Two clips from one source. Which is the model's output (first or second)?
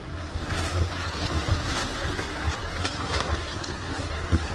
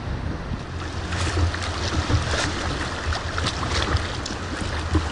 first